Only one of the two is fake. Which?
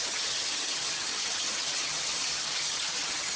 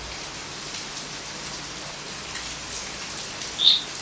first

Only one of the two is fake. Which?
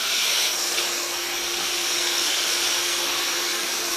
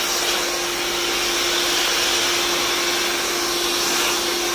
first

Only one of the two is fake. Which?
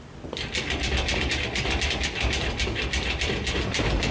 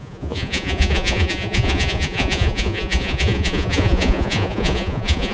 second